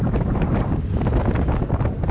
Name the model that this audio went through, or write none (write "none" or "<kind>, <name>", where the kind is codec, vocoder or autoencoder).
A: none